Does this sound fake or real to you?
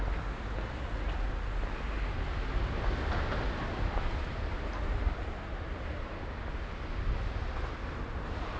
real